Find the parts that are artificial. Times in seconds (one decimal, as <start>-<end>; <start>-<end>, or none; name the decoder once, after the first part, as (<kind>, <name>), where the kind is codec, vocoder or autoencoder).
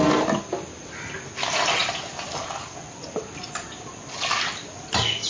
none